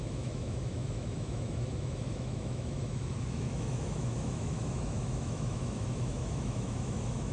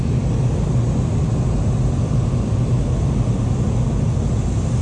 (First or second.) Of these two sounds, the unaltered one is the second